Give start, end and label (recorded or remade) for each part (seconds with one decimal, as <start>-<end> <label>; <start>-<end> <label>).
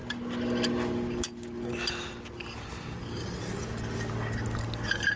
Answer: 0.0-5.2 recorded